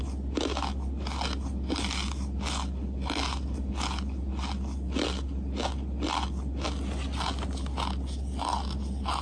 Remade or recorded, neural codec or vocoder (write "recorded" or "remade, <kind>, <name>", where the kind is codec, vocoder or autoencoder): recorded